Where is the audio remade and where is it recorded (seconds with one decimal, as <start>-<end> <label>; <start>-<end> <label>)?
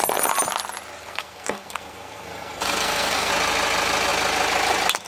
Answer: 0.0-1.0 recorded; 1.0-3.3 remade; 3.3-5.1 recorded